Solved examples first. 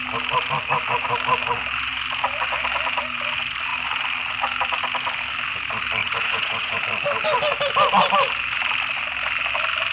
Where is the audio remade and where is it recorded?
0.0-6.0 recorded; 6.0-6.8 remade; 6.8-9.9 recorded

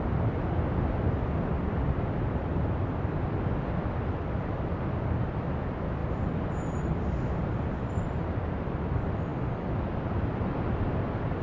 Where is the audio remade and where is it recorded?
0.0-6.0 recorded; 6.0-6.9 remade; 6.9-11.4 recorded

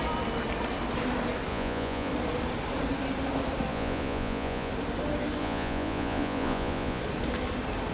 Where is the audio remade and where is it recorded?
0.0-1.5 recorded; 1.5-2.1 remade; 2.1-3.7 recorded; 3.7-4.7 remade; 4.7-5.4 recorded; 5.4-7.0 remade; 7.0-7.9 recorded

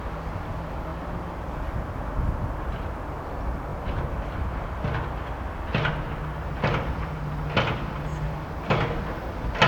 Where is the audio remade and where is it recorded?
0.0-9.7 recorded